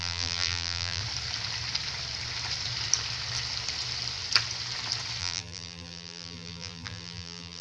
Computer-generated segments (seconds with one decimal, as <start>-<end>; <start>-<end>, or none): 0.0-1.0; 5.2-7.6